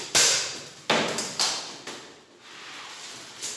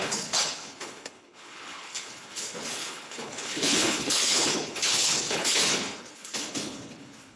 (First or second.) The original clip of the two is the first